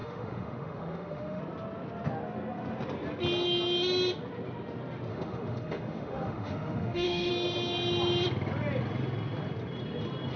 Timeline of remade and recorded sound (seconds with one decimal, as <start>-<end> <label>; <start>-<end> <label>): 0.0-1.4 remade; 1.4-5.1 recorded; 5.1-7.3 remade; 7.3-10.4 recorded